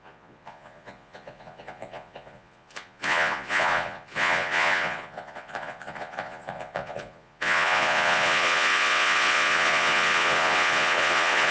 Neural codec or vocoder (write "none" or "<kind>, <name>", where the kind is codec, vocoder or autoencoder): vocoder, Vocos